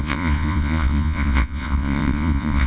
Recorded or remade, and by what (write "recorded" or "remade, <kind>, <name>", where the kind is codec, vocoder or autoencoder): remade, vocoder, Vocos